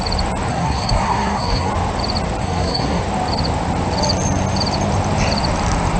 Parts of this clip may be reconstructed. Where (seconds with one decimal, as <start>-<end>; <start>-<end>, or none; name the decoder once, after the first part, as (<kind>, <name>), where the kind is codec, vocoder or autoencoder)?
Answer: 0.5-1.7 (codec, SNAC); 2.4-3.0